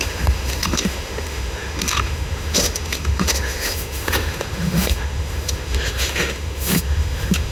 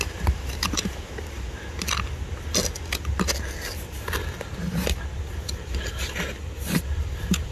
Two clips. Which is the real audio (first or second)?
second